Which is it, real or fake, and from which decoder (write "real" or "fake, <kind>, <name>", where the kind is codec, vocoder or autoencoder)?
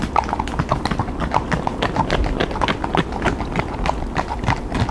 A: real